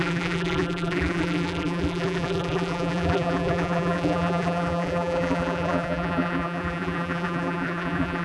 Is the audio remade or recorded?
remade